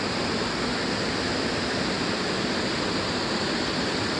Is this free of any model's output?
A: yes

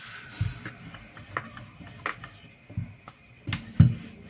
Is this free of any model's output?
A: yes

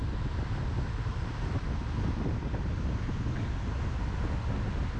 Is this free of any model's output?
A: yes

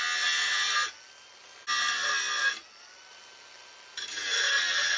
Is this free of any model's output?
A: yes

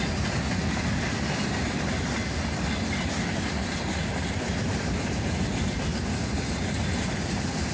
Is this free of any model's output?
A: yes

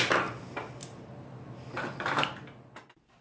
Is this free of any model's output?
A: yes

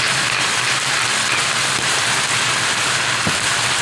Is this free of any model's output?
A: yes